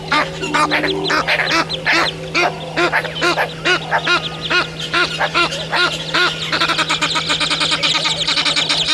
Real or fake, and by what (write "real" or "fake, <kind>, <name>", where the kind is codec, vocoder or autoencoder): real